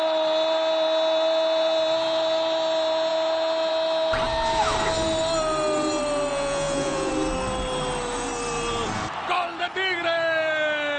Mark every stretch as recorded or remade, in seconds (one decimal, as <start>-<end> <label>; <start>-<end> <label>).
0.0-6.3 recorded; 6.3-7.1 remade; 7.1-11.0 recorded